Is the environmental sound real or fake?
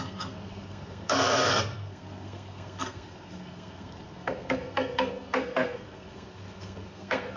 fake